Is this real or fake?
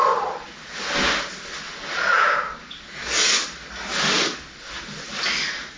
real